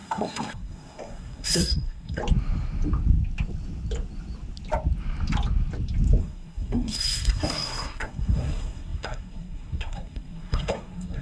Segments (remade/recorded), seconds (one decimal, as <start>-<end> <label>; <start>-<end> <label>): 0.0-2.2 remade; 2.2-6.2 recorded; 6.2-11.2 remade